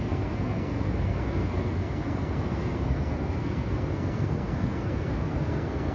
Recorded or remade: remade